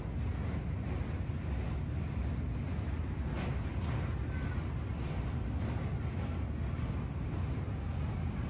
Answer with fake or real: real